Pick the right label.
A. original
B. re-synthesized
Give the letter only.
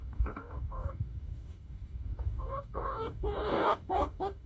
B